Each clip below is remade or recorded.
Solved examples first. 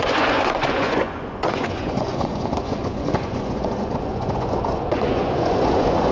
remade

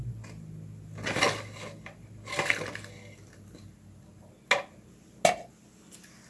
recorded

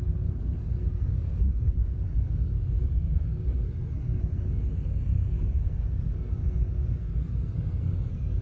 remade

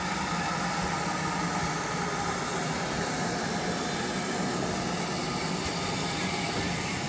recorded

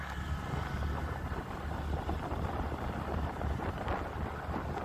recorded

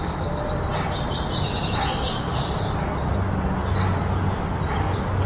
recorded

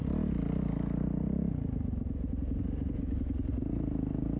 recorded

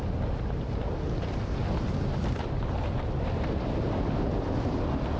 recorded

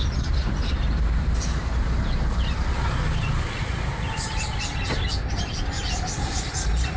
recorded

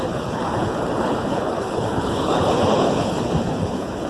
remade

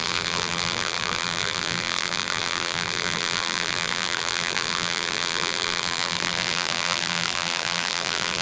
remade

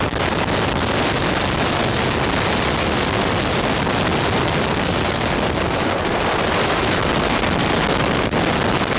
recorded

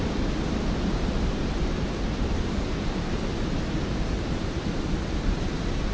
remade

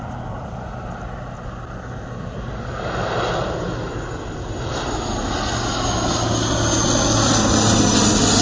recorded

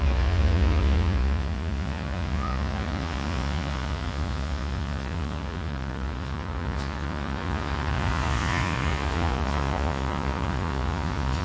remade